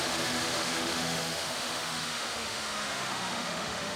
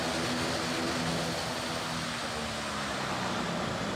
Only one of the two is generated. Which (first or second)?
first